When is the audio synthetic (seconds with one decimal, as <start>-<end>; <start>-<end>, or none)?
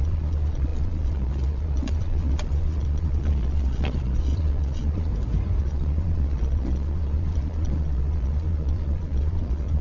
0.0-5.1; 5.6-9.8